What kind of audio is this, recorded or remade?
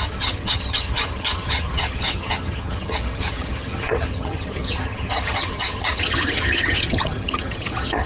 remade